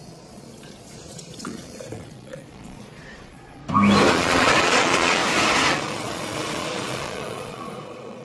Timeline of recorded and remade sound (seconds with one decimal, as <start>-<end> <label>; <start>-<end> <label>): 0.0-3.6 remade; 3.6-4.1 recorded; 4.1-5.2 remade; 5.2-5.7 recorded; 5.7-8.2 remade